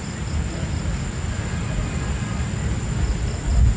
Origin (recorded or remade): recorded